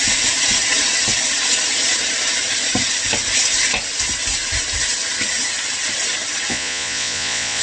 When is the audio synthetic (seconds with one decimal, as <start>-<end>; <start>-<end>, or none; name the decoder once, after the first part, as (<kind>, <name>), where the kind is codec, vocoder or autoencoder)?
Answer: 6.5-7.6 (vocoder, Vocos)

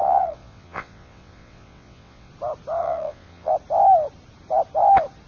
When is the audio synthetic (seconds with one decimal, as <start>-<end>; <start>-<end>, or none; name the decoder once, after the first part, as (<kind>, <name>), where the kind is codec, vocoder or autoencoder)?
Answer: 0.0-2.3 (vocoder, WaveNeXt); 2.8-3.5